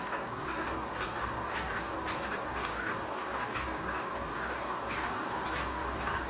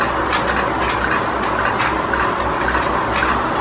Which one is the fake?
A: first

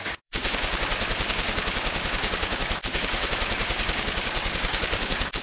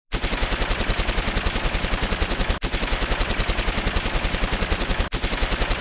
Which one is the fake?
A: first